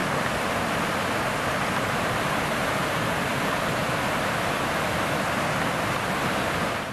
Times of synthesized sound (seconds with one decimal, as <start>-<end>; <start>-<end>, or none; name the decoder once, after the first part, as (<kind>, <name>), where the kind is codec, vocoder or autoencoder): 1.9-3.3 (vocoder, BigVGAN v2); 5.9-6.9